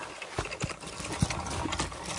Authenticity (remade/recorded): recorded